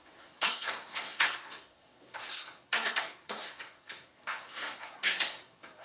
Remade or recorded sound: remade